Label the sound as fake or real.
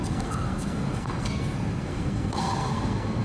fake